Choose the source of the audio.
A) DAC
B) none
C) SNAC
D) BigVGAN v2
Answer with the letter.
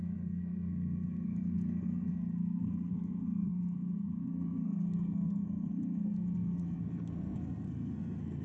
C